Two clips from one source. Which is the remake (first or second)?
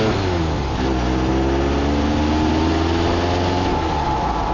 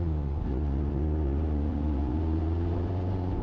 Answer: second